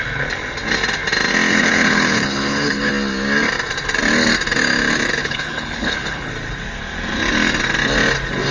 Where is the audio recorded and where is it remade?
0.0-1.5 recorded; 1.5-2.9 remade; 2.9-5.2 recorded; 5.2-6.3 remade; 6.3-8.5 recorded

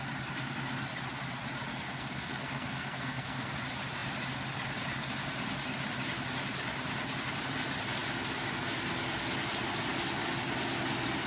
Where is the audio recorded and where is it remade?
0.0-1.7 recorded; 1.7-3.5 remade; 3.5-11.3 recorded

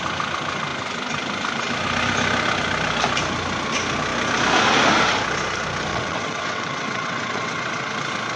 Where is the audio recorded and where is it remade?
0.0-5.9 recorded; 5.9-7.9 remade; 7.9-8.4 recorded

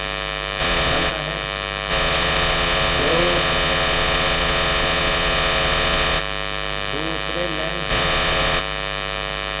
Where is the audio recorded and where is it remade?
0.0-0.6 recorded; 0.6-1.1 remade; 1.1-1.9 recorded; 1.9-6.2 remade; 6.2-7.9 recorded; 7.9-8.6 remade; 8.6-9.6 recorded

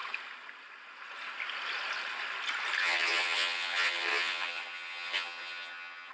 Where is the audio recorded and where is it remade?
0.0-2.8 recorded; 2.8-6.1 remade

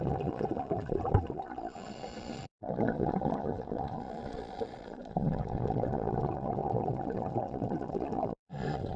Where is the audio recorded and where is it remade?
0.0-9.0 remade